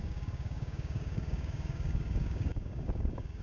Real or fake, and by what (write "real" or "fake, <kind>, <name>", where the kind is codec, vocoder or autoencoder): fake, codec, DAC